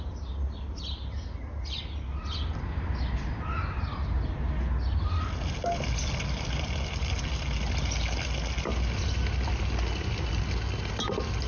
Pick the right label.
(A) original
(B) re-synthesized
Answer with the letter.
A